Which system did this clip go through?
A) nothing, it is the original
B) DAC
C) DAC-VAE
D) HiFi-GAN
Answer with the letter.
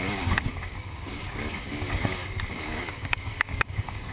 B